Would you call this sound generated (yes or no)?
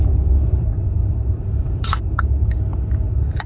yes